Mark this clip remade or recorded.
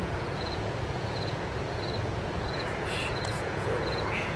remade